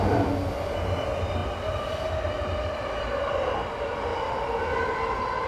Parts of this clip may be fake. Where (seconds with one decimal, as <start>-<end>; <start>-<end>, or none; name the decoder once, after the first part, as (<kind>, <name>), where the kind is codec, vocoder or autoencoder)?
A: none